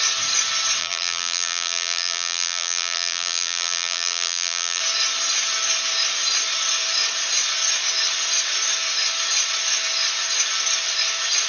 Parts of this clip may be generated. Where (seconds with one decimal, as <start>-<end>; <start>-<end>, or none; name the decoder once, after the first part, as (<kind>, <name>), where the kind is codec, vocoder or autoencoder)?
0.8-4.8 (vocoder, BigVGAN v2)